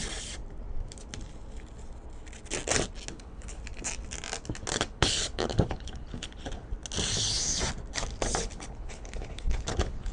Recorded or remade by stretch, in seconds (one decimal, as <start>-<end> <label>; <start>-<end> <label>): 0.0-3.1 recorded; 3.1-3.6 remade; 3.6-4.7 recorded; 4.7-6.7 remade; 6.7-8.4 recorded; 8.4-10.1 remade